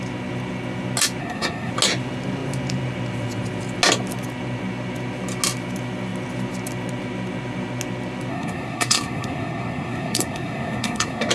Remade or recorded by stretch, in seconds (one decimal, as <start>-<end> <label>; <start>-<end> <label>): 0.0-1.2 recorded; 1.2-1.7 remade; 1.7-8.3 recorded; 8.3-11.3 remade